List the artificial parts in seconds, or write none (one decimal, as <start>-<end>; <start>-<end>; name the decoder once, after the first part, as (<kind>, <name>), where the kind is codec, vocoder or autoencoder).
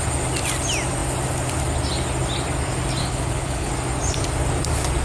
3.0-3.7 (codec, HILCodec)